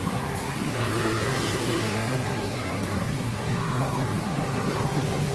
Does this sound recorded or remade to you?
remade